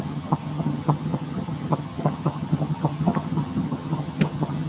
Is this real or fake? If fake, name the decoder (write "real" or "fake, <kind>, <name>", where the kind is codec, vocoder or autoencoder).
fake, vocoder, HiFi-GAN